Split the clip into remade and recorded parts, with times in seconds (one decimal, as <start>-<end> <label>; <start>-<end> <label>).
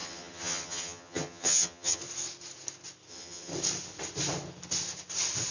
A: 0.0-2.0 remade; 2.0-3.1 recorded; 3.1-3.5 remade; 3.5-5.5 recorded